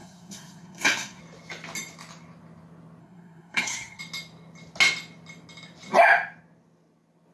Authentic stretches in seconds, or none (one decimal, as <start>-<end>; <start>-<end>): 1.2-3.0; 4.0-7.3